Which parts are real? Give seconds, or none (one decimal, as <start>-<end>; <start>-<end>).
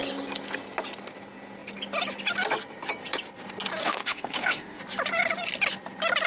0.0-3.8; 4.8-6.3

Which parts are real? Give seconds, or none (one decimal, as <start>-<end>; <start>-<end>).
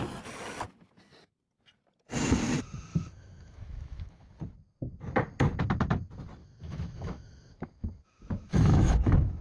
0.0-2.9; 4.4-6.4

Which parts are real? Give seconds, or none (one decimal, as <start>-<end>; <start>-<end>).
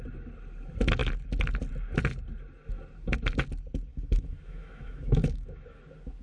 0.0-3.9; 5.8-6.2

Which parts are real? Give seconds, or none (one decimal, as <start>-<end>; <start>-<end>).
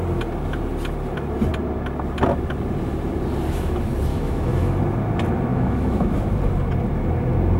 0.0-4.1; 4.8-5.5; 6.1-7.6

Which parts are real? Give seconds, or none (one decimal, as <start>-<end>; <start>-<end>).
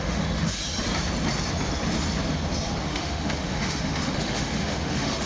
0.6-2.8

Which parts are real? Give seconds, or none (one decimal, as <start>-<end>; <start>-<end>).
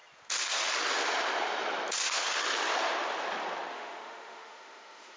0.0-3.7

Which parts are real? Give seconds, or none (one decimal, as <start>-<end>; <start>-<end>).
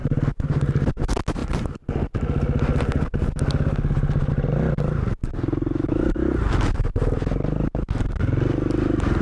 0.0-9.2